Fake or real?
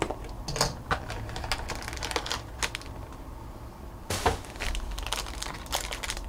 real